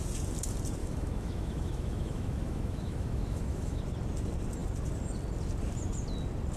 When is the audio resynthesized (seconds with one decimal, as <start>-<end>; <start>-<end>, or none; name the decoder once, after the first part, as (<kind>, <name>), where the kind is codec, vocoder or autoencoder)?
0.8-3.8 (autoencoder, DAC-VAE)